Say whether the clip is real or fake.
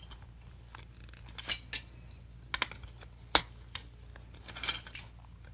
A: real